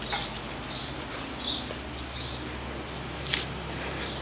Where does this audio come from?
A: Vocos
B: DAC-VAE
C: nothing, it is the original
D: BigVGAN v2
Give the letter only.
C